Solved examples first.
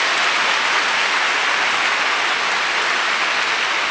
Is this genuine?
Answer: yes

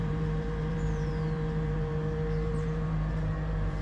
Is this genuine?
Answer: no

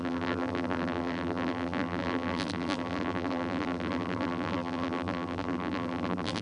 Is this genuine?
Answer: no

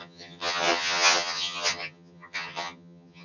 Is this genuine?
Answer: no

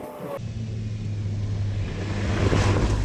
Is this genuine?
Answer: yes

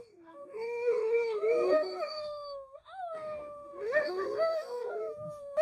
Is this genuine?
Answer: no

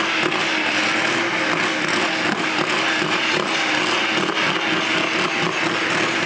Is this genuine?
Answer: yes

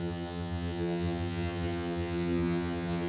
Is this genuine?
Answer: no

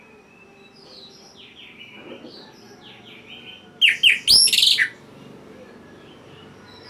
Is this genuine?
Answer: yes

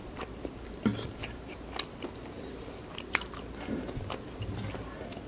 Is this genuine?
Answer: yes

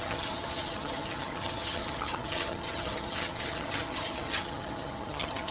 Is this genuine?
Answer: no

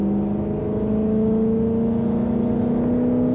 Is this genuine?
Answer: yes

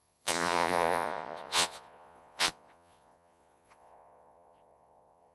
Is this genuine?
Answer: no